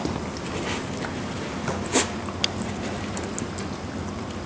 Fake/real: real